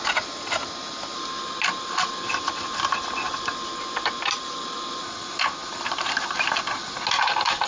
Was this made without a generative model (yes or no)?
yes